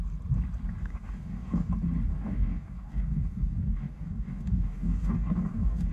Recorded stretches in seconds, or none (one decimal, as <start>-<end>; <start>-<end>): 0.0-0.8; 1.7-2.1

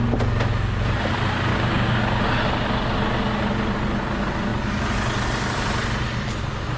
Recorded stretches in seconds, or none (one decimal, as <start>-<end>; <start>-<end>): 0.0-1.5; 2.0-6.8

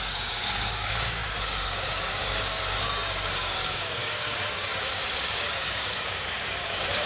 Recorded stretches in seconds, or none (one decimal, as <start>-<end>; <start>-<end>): none

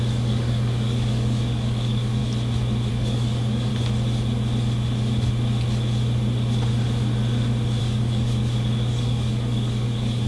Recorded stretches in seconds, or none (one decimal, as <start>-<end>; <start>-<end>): 2.2-2.9; 3.7-7.8

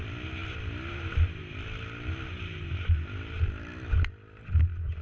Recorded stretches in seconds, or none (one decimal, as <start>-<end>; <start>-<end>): 0.0-5.0

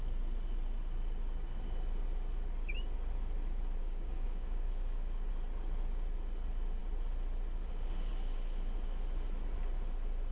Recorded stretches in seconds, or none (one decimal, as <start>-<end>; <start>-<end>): 0.0-3.8; 5.3-10.3

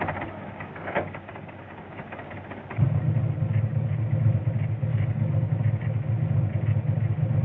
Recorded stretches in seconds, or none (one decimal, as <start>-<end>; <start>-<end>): 0.0-0.4; 2.3-4.9; 5.5-7.4